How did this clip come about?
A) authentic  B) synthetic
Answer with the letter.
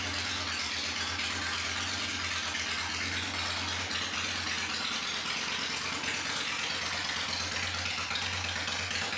A